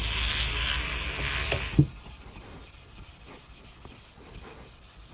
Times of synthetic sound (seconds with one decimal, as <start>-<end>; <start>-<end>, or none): none